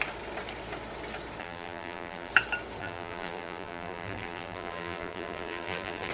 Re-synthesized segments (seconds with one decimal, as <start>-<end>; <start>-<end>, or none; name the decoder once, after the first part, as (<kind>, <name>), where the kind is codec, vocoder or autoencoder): 1.4-2.3 (vocoder, BigVGAN v2); 2.8-6.1